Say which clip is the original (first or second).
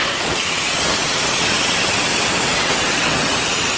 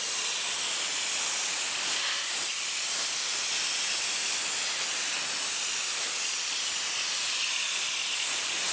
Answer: second